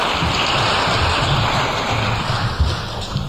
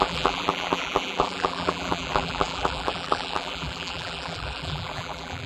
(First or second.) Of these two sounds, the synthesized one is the second